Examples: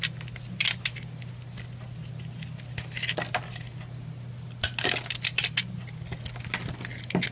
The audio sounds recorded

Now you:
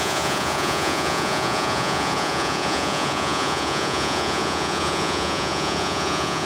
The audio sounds remade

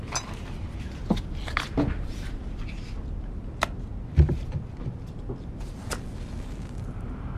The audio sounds recorded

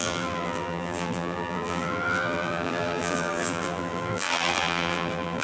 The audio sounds remade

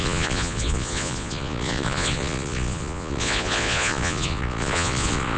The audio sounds remade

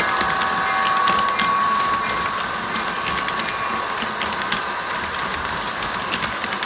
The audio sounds recorded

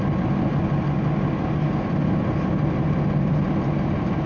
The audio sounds recorded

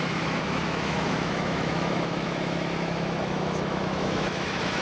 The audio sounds remade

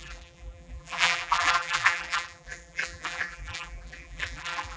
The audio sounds remade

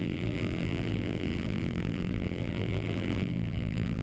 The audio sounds remade